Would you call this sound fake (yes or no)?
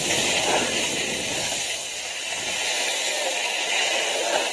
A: yes